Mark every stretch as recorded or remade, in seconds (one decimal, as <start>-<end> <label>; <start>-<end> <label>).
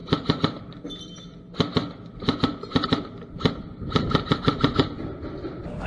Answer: 0.0-0.6 remade; 0.6-5.9 recorded